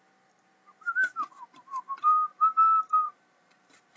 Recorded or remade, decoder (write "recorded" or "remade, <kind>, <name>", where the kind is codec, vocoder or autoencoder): remade, vocoder, BigVGAN v2